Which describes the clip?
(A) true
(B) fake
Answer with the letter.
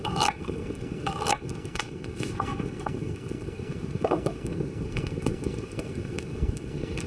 B